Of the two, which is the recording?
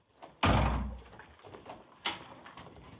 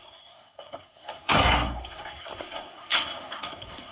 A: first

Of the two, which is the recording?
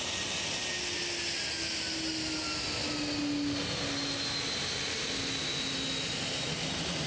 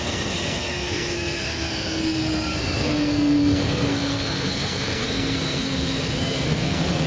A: first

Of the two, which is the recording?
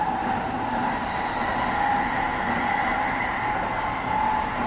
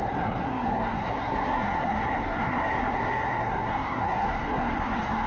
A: first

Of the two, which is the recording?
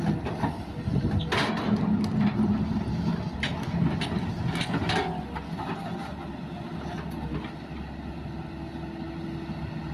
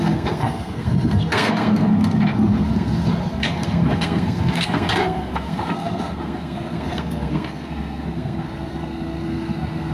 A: first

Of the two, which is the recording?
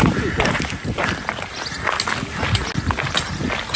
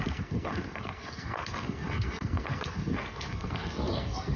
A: first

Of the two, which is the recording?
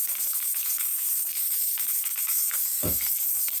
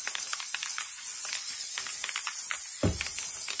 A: second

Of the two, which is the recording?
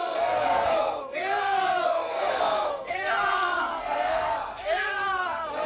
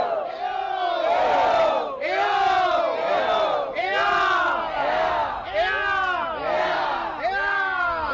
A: second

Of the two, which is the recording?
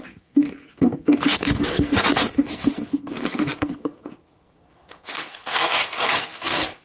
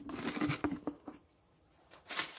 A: second